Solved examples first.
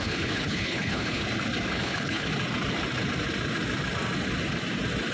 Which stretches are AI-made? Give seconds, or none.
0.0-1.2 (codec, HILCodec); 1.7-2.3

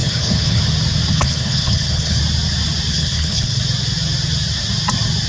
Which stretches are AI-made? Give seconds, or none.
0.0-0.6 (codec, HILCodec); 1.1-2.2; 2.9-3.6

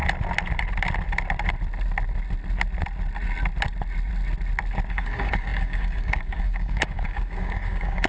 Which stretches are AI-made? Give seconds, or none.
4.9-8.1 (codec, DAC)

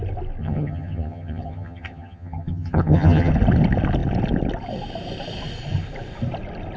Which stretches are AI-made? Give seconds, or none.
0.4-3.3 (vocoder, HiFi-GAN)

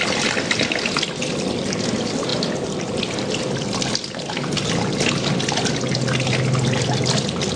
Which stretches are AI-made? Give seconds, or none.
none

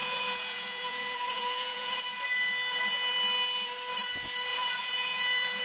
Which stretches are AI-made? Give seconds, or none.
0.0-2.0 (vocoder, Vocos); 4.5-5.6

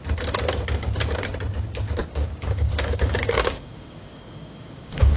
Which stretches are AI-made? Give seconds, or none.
2.0-5.2 (codec, DAC)

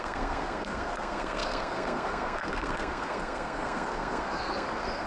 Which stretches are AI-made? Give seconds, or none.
0.0-5.1 (codec, SNAC)